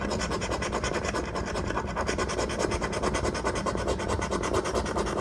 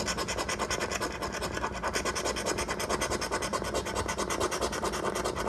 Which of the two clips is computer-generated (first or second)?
first